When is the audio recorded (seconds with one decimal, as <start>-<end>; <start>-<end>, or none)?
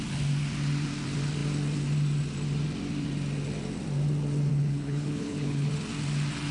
0.0-4.5; 5.7-6.5